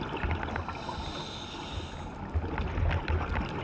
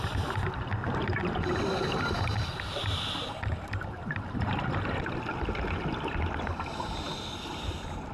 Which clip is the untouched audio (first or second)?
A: first